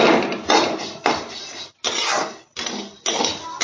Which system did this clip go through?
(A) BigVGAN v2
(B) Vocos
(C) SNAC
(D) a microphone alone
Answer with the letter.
D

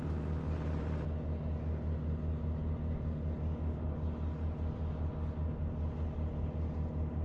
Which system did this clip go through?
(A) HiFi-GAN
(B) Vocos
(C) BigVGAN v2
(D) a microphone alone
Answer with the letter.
D